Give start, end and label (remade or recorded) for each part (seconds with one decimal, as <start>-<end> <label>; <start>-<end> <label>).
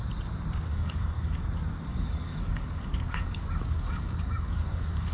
0.0-0.7 recorded; 0.7-1.4 remade; 1.4-1.9 recorded; 1.9-5.1 remade